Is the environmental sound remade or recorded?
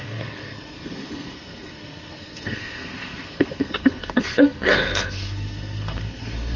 remade